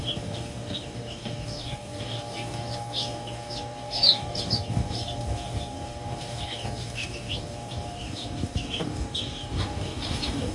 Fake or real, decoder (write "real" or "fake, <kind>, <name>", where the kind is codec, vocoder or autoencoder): fake, codec, DAC